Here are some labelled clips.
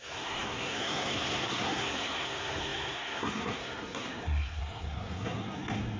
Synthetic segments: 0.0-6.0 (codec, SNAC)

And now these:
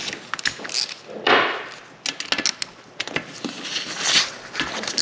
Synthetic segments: none

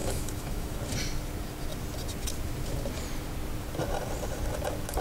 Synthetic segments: 0.0-0.8 (autoencoder, DAC-VAE)